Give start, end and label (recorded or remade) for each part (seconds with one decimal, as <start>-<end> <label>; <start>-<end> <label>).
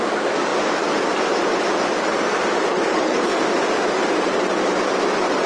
0.0-2.7 recorded; 2.7-3.4 remade; 3.4-5.5 recorded